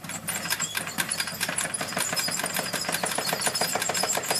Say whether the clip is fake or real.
fake